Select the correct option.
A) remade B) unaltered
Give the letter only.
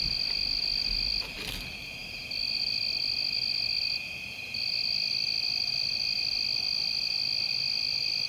B